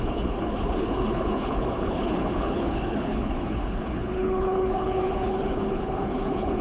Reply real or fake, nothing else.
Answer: fake